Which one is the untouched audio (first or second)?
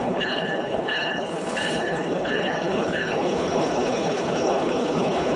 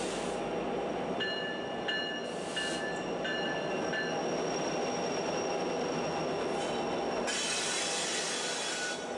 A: second